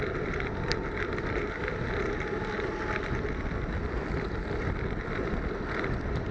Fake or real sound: real